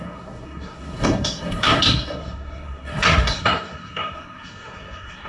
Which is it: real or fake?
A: fake